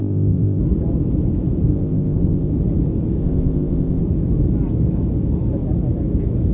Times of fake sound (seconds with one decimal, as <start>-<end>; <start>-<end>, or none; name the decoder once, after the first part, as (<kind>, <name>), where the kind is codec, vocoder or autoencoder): 0.0-0.6 (codec, ZipCodec); 1.7-2.5; 3.2-4.0